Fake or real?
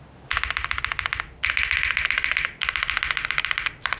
real